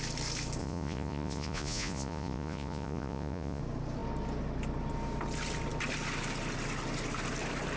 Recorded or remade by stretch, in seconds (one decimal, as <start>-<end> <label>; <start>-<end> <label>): 0.0-0.6 recorded; 0.6-3.6 remade; 3.6-7.8 recorded